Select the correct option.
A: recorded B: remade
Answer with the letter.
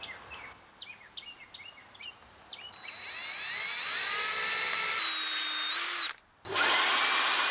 A